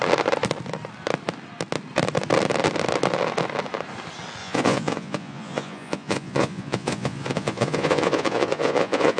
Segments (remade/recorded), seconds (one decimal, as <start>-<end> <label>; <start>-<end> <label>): 0.0-4.4 recorded; 4.4-9.2 remade